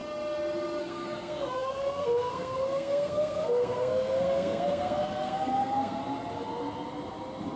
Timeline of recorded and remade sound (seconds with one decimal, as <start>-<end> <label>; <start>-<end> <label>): 0.0-0.8 recorded; 0.8-6.0 remade; 6.0-7.6 recorded